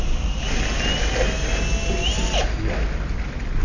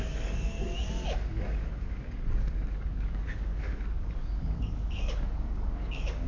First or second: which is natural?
first